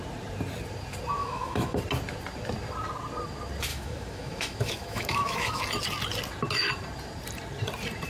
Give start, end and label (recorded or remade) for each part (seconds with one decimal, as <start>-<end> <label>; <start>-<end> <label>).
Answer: 0.0-1.2 recorded; 1.2-1.8 remade; 1.8-3.7 recorded; 3.7-5.6 remade; 5.6-8.1 recorded